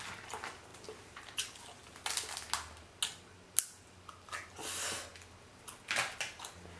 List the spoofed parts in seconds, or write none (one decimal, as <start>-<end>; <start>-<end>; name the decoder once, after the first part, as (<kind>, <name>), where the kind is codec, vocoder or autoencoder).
0.7-1.6 (vocoder, BigVGAN v2)

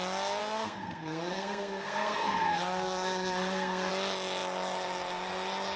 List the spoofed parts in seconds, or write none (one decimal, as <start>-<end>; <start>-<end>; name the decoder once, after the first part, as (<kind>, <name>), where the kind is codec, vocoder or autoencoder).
0.4-3.9 (codec, SNAC)